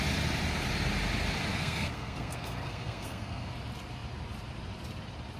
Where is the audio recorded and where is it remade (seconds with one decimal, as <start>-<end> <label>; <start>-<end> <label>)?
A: 0.0-1.5 recorded; 1.5-3.5 remade; 3.5-5.4 recorded